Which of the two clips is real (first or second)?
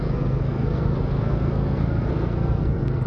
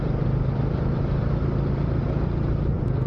second